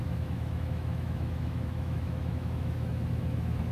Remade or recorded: remade